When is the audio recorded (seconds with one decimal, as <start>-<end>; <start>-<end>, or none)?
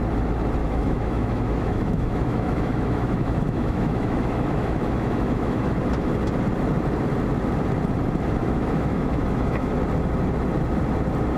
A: 0.0-0.6; 5.8-8.4; 9.7-11.4